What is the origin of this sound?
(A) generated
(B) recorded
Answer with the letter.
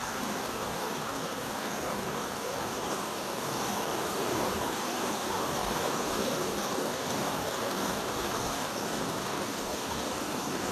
A